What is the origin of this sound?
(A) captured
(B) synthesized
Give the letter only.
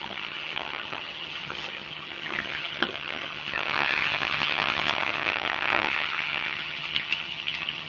B